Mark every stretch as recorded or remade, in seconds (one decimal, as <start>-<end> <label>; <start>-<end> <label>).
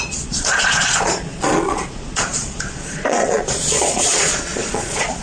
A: 0.0-5.2 remade